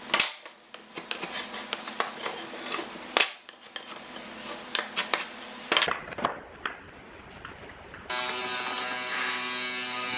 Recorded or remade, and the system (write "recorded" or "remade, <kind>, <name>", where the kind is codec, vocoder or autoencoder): recorded